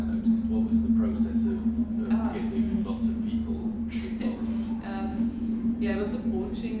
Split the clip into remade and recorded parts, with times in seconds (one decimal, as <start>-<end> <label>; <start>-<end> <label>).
0.0-5.1 recorded; 5.1-6.8 remade